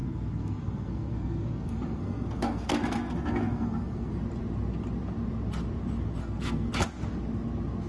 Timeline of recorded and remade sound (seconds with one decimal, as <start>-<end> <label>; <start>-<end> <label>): 0.0-4.1 remade; 4.1-6.2 recorded; 6.2-6.7 remade; 6.7-7.9 recorded